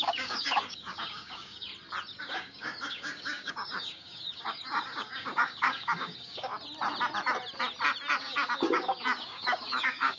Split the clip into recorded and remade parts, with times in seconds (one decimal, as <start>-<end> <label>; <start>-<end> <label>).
0.0-1.7 remade; 1.7-2.2 recorded; 2.2-6.5 remade; 6.5-8.2 recorded; 8.2-10.2 remade